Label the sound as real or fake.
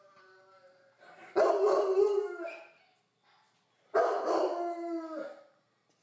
real